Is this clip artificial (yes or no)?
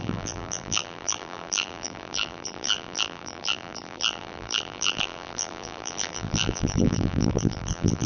yes